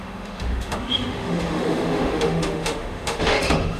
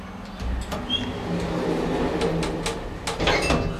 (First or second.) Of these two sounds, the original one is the second